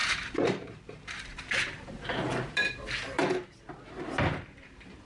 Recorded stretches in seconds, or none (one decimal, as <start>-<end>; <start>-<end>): 1.4-5.0